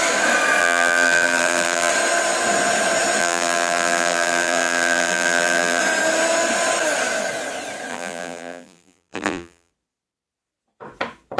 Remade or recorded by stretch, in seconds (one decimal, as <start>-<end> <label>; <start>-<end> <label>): 0.0-0.6 recorded; 0.6-1.9 remade; 1.9-3.2 recorded; 3.2-5.8 remade; 5.8-7.9 recorded; 7.9-9.7 remade; 9.7-11.4 recorded